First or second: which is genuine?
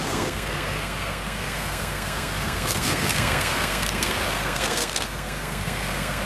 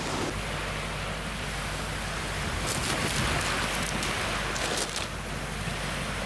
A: second